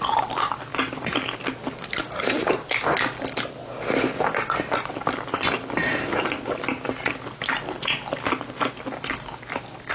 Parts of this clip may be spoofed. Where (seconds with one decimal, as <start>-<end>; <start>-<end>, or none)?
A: none